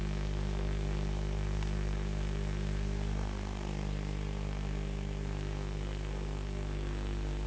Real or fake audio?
fake